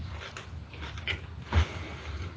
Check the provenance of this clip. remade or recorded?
recorded